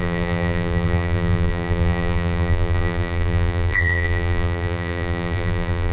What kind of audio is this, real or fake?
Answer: fake